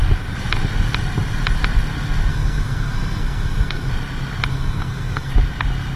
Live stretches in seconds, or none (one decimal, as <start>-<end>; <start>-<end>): 0.0-2.3; 3.9-4.5; 5.3-6.0